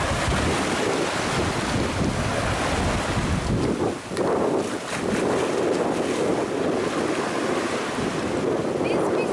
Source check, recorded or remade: recorded